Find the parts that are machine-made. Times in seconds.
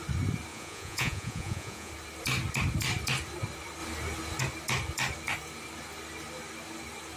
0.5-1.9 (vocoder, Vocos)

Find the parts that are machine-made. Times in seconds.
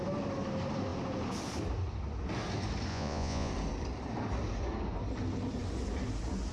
2.9-3.5 (vocoder, Vocos)